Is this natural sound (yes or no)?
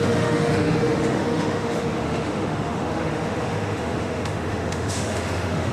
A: no